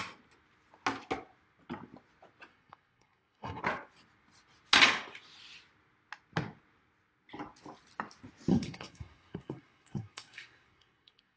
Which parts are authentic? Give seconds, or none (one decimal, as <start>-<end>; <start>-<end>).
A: 0.0-2.5; 3.6-8.5